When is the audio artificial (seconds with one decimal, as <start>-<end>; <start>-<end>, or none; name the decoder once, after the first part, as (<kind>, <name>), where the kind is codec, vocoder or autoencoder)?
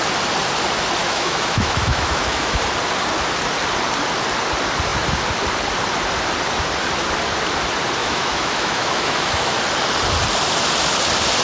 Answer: 1.0-2.6 (autoencoder, DAC-VAE); 8.0-9.6